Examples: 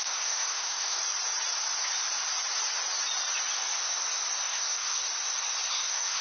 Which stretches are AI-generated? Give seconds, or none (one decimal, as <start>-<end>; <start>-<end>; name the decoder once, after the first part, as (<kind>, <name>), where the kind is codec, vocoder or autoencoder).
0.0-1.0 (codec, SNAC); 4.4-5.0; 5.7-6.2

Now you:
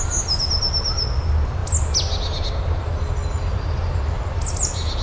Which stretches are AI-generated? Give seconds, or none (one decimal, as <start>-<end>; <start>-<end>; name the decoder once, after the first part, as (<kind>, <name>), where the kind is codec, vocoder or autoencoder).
none

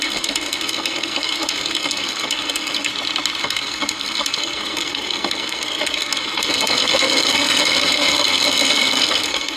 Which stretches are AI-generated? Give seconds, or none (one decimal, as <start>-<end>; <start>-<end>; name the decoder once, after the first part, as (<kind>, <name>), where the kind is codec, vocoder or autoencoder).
0.0-2.9 (codec, SNAC); 3.4-9.6

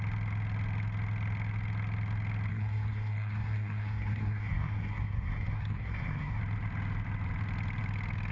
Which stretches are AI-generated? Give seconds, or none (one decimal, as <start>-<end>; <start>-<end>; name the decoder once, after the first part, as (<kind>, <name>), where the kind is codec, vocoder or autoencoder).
2.5-6.4 (codec, SNAC)